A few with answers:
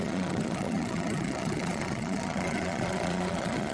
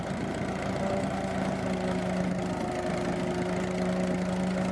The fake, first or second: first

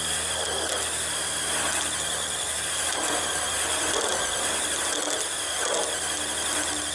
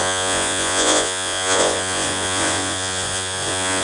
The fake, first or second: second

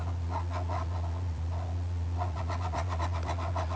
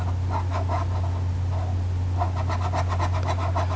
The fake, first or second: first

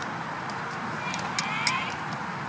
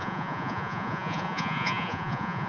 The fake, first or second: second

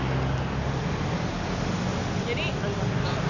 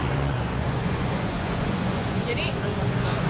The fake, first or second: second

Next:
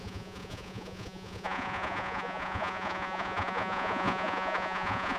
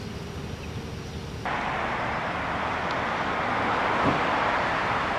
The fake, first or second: first